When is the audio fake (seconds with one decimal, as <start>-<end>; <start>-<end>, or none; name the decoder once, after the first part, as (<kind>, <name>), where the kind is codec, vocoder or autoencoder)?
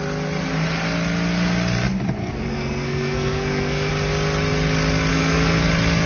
2.2-3.9 (codec, SNAC); 5.1-5.6